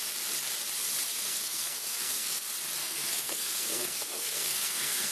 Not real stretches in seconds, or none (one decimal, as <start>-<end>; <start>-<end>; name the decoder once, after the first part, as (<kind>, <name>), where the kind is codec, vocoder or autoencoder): 1.1-2.4 (codec, SNAC); 2.8-5.1